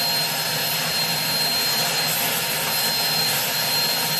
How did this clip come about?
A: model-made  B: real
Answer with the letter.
B